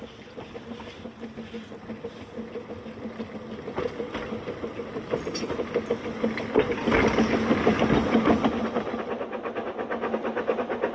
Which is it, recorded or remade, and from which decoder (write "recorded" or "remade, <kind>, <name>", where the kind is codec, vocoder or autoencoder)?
recorded